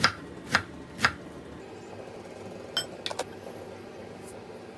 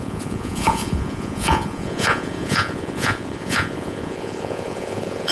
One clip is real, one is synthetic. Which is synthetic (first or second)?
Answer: second